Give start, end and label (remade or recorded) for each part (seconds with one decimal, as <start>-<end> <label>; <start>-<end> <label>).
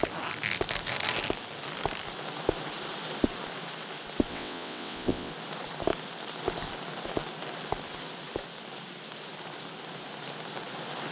0.0-4.3 recorded; 4.3-5.3 remade; 5.3-11.1 recorded